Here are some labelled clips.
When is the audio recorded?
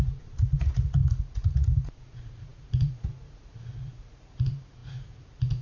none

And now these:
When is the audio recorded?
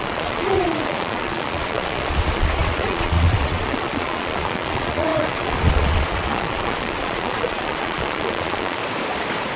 8.8-9.6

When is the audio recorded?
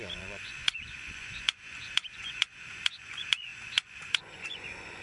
none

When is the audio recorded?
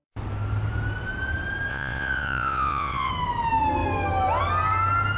0.0-1.7; 3.1-5.2